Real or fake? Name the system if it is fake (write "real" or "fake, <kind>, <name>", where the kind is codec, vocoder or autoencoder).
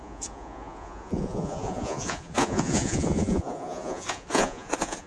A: fake, vocoder, Vocos